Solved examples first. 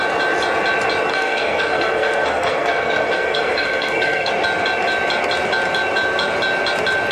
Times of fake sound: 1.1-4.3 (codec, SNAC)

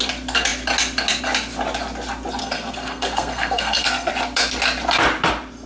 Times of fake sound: 2.4-4.1 (codec, SNAC)

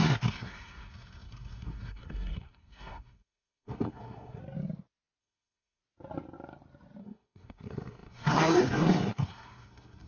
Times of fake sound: 0.0-4.4 (codec, SNAC); 5.2-5.8; 7.0-10.1

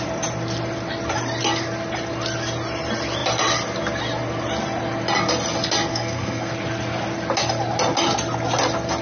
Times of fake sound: 5.9-6.5 (codec, SNAC)

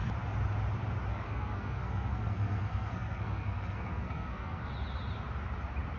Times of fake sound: 1.1-4.7 (codec, SNAC)